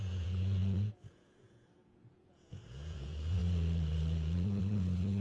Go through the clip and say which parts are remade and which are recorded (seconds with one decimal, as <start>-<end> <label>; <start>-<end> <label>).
0.0-5.2 remade